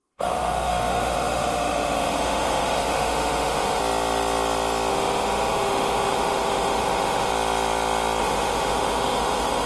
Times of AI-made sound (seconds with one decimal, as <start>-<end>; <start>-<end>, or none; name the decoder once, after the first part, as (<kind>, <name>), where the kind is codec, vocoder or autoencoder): 0.0-3.8 (autoencoder, DAC-VAE); 4.9-7.3; 8.2-9.7